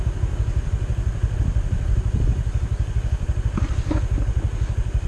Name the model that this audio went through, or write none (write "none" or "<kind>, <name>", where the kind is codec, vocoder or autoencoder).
none